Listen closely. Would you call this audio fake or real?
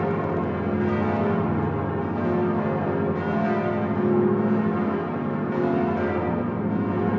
real